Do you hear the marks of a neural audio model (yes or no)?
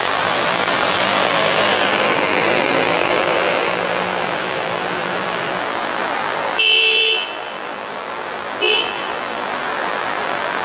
yes